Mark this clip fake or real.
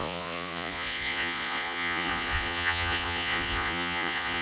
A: fake